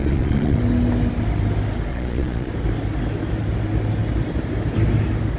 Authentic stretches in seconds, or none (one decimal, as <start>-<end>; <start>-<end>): 0.6-1.9; 2.5-5.4